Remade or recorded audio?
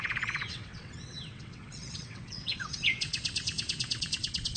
remade